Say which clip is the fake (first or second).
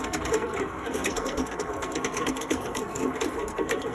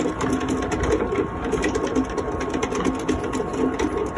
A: first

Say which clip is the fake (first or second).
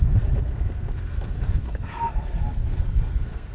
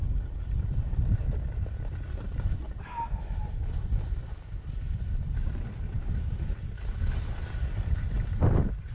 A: first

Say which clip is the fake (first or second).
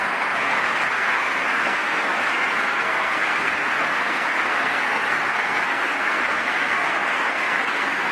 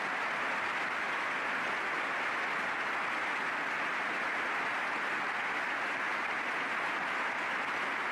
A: first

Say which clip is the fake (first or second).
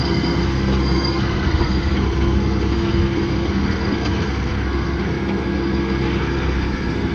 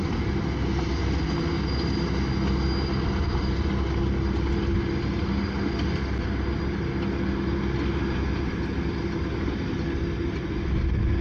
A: first